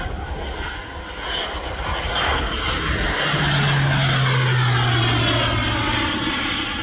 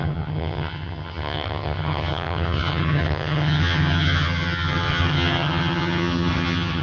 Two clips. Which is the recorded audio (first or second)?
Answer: first